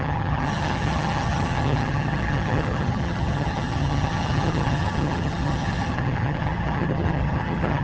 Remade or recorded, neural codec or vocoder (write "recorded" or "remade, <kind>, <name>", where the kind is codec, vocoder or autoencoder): remade, vocoder, HiFi-GAN